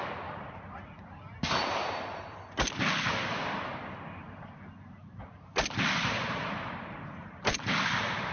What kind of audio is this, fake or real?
real